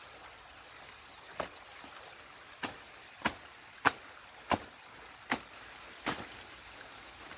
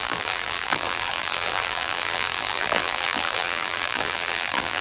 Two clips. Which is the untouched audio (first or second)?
first